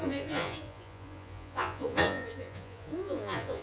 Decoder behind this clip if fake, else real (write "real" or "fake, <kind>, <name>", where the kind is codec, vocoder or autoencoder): fake, vocoder, Vocos